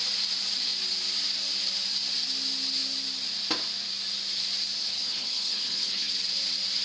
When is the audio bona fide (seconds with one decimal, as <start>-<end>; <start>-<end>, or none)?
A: 0.0-4.8; 6.1-6.8